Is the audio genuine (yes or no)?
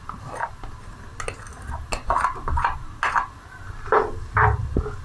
yes